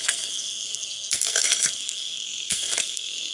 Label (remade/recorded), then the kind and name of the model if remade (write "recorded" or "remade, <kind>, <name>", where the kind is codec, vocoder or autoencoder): remade, codec, SNAC